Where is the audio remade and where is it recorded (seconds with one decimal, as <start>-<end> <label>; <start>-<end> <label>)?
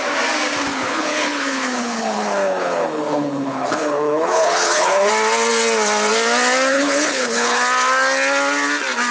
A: 0.0-0.7 recorded; 0.7-5.1 remade; 5.1-6.7 recorded; 6.7-7.6 remade; 7.6-9.1 recorded